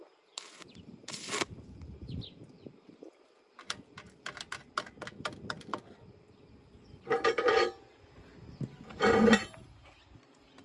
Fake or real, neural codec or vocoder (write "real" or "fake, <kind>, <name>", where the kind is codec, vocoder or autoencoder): real